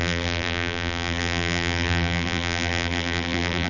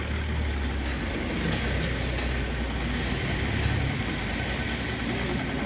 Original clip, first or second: second